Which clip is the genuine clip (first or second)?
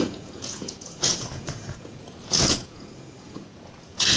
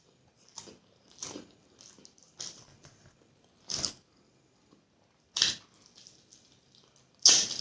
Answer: second